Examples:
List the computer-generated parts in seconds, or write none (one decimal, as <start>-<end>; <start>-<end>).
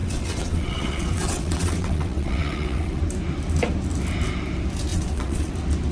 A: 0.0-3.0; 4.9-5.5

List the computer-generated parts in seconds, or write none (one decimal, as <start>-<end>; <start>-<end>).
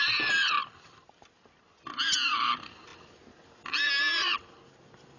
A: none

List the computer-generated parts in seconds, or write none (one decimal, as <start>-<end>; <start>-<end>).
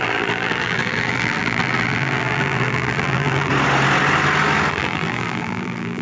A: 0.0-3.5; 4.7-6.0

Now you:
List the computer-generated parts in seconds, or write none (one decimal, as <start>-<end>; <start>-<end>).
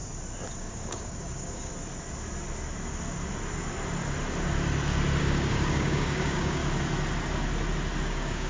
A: 0.6-1.7; 5.2-6.6; 8.0-8.5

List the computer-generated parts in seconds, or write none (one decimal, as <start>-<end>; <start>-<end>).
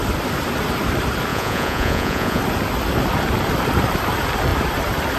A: 1.3-2.4